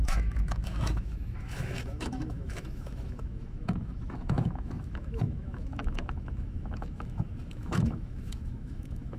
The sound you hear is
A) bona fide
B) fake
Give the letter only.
B